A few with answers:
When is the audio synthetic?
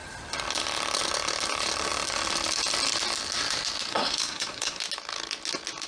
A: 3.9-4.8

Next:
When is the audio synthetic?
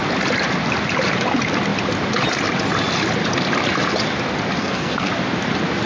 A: 4.6-5.1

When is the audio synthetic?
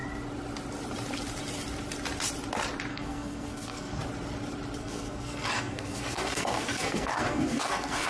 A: 2.9-4.0; 4.8-8.1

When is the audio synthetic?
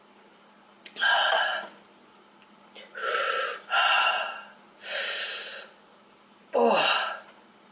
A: none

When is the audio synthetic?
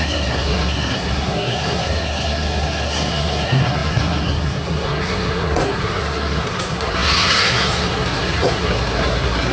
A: 0.0-9.5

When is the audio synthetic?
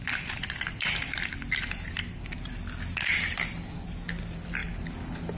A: none